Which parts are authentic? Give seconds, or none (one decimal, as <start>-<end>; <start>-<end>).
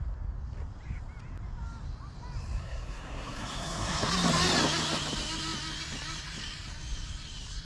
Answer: 0.0-2.6; 4.1-7.6